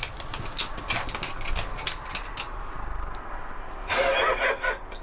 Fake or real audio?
real